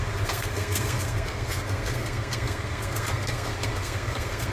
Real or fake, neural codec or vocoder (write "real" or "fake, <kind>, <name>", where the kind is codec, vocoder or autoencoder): fake, codec, SNAC